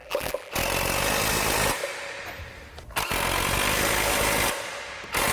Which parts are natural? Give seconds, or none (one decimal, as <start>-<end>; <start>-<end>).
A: 0.5-5.3

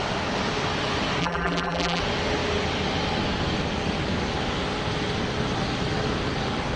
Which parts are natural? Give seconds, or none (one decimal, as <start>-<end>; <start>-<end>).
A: 0.0-1.2; 2.0-6.8

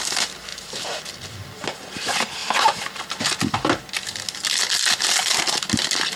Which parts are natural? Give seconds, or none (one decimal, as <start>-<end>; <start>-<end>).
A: 0.0-0.5; 1.0-2.4; 3.0-6.2

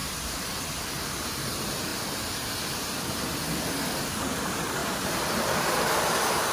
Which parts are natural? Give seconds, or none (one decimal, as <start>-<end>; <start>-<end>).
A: 0.0-1.3; 1.9-4.0; 4.8-6.5

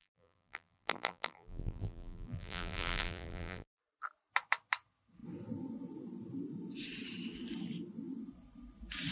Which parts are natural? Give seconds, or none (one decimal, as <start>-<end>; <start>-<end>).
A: 3.8-9.1